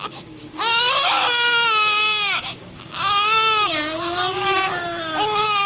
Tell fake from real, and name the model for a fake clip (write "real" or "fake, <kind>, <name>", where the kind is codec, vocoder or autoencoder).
fake, codec, DAC